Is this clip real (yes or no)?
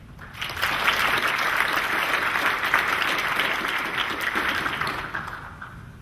yes